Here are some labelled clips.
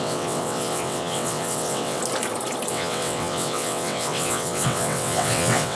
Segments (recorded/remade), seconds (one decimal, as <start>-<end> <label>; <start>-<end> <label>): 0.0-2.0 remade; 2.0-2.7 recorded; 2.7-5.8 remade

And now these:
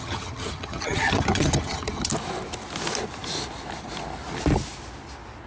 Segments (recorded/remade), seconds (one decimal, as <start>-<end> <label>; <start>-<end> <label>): 0.0-2.1 remade; 2.1-5.5 recorded

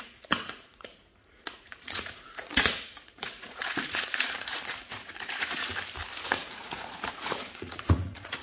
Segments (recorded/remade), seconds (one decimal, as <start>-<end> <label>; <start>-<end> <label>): 0.0-5.7 remade; 5.7-6.2 recorded; 6.2-8.4 remade